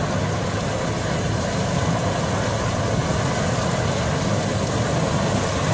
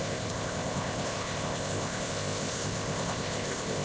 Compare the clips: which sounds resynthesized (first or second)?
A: second